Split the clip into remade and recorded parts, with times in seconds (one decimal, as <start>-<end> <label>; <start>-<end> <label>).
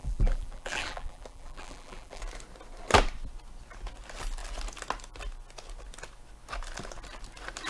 0.0-2.2 remade; 2.2-7.7 recorded